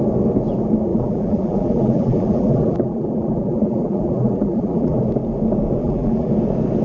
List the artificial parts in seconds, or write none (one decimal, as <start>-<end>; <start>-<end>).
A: 0.9-5.0; 5.8-6.3